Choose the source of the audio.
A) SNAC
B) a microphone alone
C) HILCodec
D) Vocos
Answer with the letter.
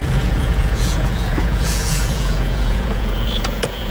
D